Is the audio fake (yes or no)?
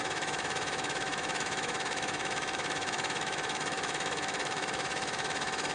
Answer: yes